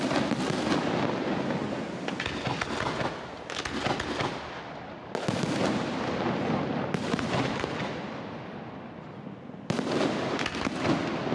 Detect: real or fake real